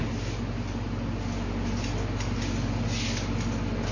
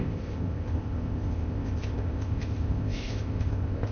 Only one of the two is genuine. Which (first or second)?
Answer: first